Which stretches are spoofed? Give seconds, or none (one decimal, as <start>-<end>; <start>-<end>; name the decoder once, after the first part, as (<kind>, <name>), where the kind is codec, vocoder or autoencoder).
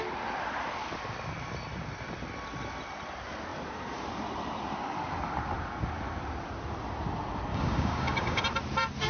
7.5-8.4 (codec, DAC)